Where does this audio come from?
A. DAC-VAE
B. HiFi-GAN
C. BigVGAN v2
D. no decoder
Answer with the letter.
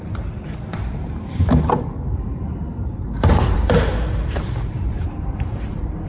C